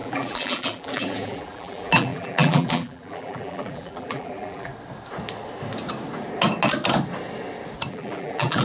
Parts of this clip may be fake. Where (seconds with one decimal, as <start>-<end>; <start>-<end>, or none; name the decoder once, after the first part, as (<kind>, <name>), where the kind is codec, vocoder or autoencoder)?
0.0-4.7 (vocoder, BigVGAN v2); 7.9-8.6

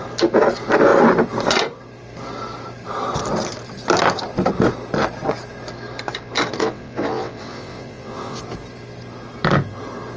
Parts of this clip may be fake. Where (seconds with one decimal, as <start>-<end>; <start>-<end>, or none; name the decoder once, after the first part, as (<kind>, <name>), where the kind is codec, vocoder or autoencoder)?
6.6-8.4 (vocoder, WaveNeXt)

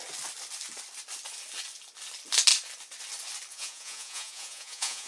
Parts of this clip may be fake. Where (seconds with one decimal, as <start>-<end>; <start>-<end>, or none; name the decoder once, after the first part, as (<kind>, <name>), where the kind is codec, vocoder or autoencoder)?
3.5-5.1 (vocoder, Vocos)

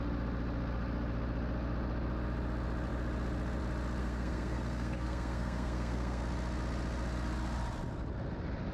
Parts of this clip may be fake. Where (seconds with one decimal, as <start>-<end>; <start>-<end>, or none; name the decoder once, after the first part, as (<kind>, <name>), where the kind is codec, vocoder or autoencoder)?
4.0-6.2 (codec, SNAC)

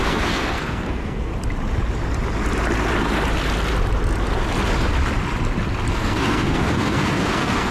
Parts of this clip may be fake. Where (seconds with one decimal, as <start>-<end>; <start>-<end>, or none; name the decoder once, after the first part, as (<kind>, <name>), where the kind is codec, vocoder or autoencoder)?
0.0-1.3 (codec, SNAC); 5.9-7.7

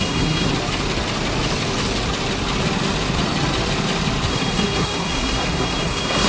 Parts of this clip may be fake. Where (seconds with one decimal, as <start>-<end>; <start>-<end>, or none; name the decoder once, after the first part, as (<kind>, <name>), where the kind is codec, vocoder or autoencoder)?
0.0-0.5 (codec, SNAC); 4.3-6.3

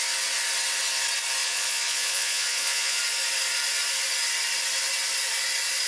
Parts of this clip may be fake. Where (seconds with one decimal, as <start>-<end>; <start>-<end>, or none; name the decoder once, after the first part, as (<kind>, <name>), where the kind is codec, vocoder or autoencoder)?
1.4-3.0 (vocoder, Vocos)

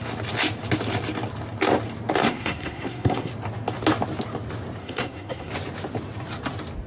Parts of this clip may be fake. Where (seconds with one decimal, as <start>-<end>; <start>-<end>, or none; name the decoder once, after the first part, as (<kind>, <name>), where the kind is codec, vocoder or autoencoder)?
2.2-3.3 (codec, SNAC); 4.8-5.5